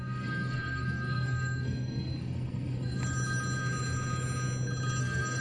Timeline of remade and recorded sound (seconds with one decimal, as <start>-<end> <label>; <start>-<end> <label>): 0.0-3.0 remade; 3.0-5.0 recorded; 5.0-5.4 remade